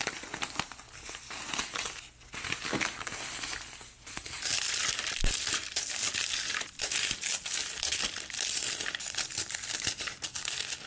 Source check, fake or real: real